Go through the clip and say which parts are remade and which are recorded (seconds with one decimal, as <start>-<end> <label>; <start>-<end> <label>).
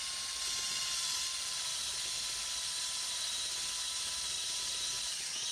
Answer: 0.0-5.5 recorded